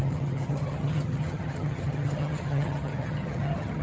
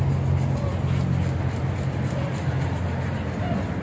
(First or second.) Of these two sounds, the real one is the second